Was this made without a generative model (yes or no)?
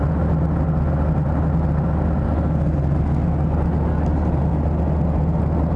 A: yes